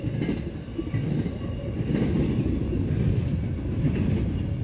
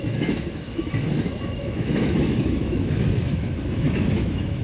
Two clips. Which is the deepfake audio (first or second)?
second